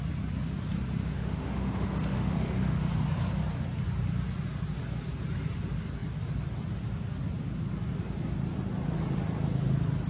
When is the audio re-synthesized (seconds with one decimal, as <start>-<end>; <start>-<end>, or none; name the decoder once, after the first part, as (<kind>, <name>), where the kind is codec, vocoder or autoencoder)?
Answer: 1.0-2.9 (autoencoder, DAC-VAE)